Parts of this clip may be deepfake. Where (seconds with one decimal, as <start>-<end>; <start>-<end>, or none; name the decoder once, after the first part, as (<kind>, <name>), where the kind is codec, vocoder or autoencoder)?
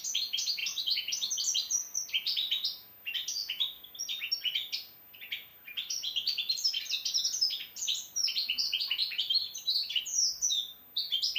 5.5-6.8 (vocoder, BigVGAN v2); 9.0-10.0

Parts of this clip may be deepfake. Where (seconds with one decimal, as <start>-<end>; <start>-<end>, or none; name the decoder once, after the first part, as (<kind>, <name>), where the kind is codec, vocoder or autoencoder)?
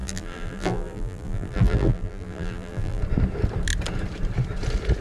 0.0-3.0 (vocoder, BigVGAN v2)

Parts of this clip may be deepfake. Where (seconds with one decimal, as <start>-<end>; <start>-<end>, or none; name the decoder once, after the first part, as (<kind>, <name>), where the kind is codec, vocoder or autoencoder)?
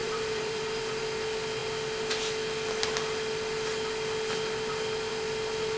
0.0-1.0 (vocoder, BigVGAN v2)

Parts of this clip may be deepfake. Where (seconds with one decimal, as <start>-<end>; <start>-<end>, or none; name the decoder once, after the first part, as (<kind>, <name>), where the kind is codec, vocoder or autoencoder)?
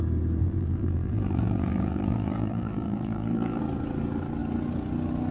0.4-3.6 (vocoder, BigVGAN v2)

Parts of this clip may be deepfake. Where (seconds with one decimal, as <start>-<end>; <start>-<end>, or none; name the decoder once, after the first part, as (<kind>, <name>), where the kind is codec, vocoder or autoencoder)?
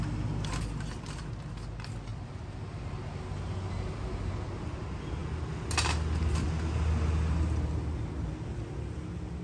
2.1-2.8 (vocoder, BigVGAN v2)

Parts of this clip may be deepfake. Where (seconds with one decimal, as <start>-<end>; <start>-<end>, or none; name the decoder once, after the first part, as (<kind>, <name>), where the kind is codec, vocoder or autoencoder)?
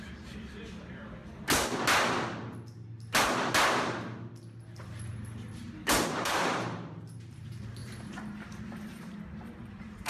0.0-1.2 (vocoder, BigVGAN v2); 6.1-10.1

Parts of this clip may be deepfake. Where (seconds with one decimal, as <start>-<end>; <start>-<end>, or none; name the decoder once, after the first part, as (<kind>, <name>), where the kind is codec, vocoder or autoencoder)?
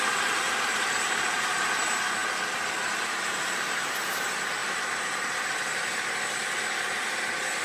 4.6-5.4 (vocoder, BigVGAN v2)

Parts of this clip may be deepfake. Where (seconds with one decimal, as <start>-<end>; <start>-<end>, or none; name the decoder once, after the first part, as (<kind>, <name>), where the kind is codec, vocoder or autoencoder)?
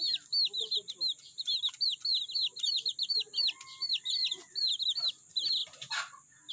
none